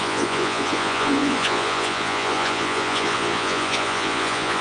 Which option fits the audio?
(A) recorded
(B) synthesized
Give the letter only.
B